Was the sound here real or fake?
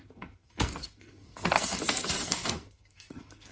fake